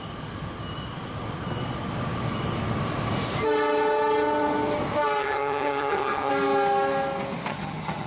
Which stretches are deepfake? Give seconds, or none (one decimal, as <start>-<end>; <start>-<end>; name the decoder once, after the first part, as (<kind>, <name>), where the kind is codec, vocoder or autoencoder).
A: 5.2-6.3 (vocoder, HiFi-GAN); 7.5-8.1